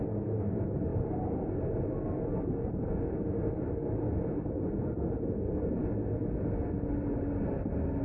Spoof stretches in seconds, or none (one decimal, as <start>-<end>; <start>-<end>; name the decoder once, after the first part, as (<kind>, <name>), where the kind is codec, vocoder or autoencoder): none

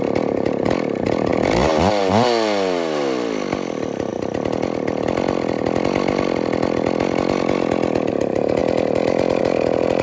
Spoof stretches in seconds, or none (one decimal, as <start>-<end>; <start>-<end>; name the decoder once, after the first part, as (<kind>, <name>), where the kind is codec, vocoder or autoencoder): none

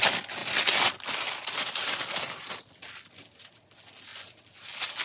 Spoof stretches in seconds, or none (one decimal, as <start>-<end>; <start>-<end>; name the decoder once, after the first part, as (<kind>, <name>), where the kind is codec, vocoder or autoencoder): none

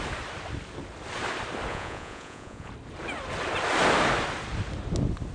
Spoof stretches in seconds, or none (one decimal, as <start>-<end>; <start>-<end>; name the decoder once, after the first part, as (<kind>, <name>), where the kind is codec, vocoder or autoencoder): 1.7-2.7 (vocoder, Vocos)